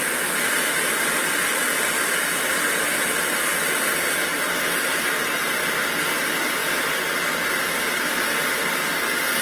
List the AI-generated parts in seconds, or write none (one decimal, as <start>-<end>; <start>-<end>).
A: none